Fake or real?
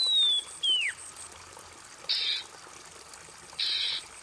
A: real